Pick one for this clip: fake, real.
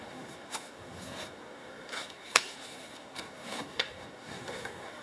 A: fake